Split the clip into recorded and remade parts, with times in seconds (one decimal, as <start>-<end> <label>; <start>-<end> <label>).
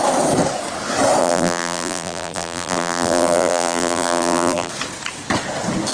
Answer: 0.0-1.2 recorded; 1.2-4.7 remade; 4.7-5.9 recorded